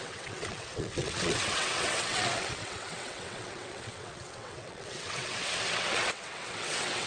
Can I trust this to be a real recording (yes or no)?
no